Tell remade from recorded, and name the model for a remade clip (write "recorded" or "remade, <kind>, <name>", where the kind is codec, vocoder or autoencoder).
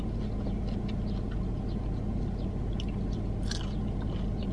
recorded